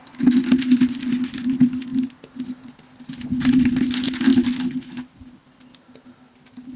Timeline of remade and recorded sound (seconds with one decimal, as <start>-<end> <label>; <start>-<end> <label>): 0.0-6.8 recorded